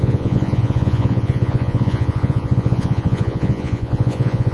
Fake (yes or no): yes